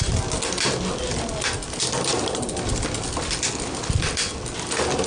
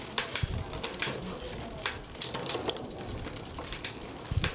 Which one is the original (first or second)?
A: first